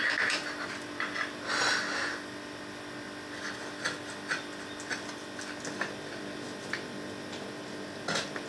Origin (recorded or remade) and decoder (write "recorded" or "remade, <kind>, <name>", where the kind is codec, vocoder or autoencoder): recorded